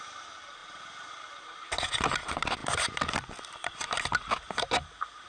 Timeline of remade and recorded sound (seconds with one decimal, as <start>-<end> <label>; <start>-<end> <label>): 0.0-5.3 recorded